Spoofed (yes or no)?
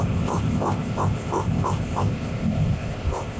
yes